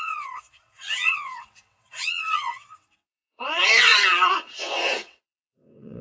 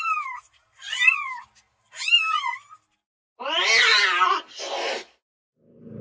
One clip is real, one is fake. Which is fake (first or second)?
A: first